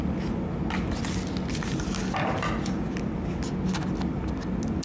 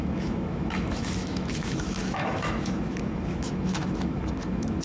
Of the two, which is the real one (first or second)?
first